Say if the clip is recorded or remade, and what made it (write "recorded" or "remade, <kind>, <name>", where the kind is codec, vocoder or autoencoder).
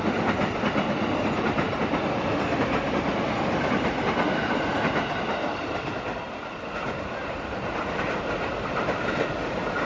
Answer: recorded